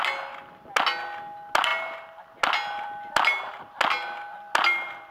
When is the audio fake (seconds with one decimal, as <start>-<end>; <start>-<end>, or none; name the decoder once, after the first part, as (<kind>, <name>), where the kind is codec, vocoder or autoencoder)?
none